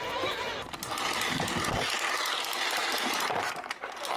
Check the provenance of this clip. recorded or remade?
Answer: recorded